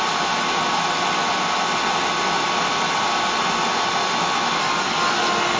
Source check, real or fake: real